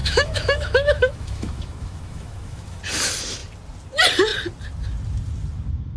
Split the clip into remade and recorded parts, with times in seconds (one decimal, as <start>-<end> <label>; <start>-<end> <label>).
0.0-2.8 remade; 2.8-6.0 recorded